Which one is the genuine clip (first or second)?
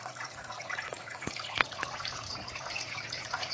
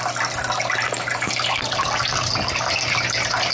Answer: second